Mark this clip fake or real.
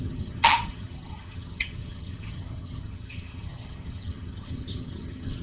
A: fake